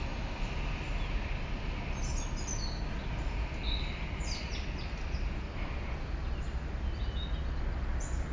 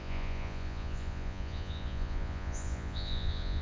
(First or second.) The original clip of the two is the first